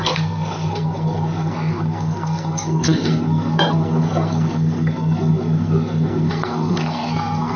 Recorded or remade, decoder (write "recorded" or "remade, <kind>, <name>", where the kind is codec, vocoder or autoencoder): remade, codec, SNAC